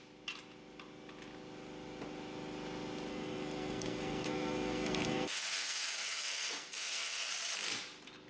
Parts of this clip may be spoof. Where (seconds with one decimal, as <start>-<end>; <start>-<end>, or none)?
3.1-7.3